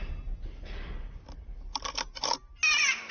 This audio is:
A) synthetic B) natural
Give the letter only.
B